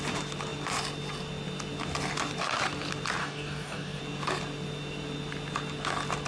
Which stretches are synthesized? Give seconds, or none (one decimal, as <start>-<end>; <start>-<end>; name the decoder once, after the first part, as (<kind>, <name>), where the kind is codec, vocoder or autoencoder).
3.2-4.0 (codec, DAC)